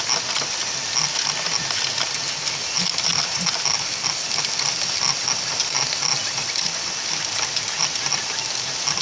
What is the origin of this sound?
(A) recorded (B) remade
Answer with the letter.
A